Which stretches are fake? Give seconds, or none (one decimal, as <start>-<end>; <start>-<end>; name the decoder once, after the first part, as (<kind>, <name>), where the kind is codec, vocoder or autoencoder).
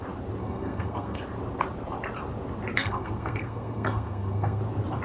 0.4-1.2 (codec, SNAC); 2.8-4.6